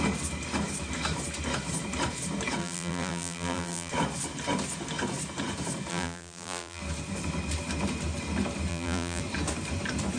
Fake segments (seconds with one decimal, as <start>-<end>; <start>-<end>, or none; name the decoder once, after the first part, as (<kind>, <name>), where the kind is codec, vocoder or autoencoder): 2.6-3.9 (vocoder, BigVGAN v2); 5.9-6.8; 8.7-9.2